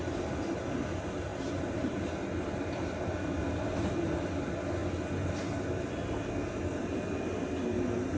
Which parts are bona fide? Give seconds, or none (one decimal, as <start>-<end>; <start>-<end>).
0.0-1.3; 2.1-8.2